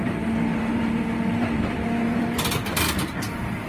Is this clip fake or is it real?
fake